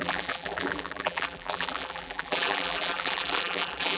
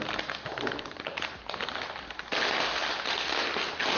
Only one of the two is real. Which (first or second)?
second